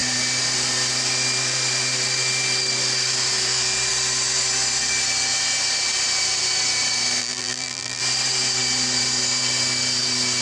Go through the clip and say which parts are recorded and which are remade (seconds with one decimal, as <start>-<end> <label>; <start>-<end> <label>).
0.0-7.2 recorded; 7.2-8.0 remade; 8.0-10.4 recorded